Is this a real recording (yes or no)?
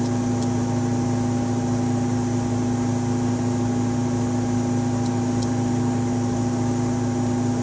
no